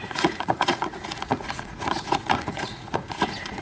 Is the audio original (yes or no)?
no